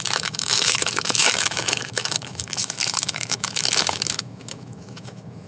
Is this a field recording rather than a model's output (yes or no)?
no